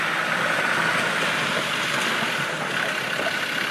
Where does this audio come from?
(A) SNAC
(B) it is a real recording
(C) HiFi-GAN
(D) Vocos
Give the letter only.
B